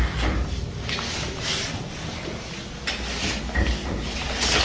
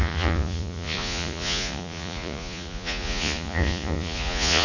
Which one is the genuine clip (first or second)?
first